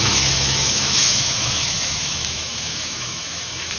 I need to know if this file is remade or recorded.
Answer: remade